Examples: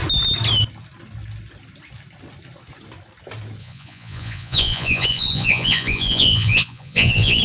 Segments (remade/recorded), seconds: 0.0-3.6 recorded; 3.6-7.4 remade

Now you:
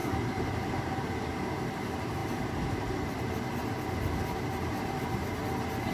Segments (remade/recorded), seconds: 0.0-1.4 remade; 1.4-5.9 recorded

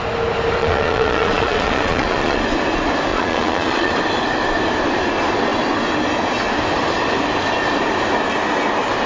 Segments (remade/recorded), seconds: 0.0-0.6 recorded; 0.6-2.4 remade; 2.4-3.1 recorded; 3.1-3.9 remade; 3.9-9.1 recorded

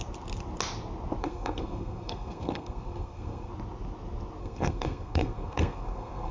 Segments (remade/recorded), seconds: 0.0-1.2 recorded; 1.2-3.5 remade; 3.5-4.4 recorded; 4.4-6.3 remade

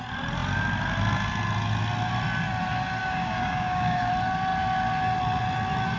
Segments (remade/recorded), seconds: 0.0-3.0 recorded; 3.0-4.1 remade; 4.1-6.0 recorded

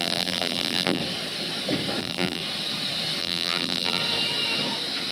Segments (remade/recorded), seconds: 0.0-1.0 remade; 1.0-2.0 recorded; 2.0-2.4 remade; 2.4-3.2 recorded; 3.2-4.0 remade; 4.0-5.1 recorded

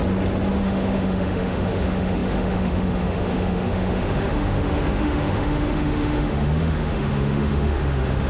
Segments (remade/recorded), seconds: 0.0-0.6 recorded; 0.6-8.3 remade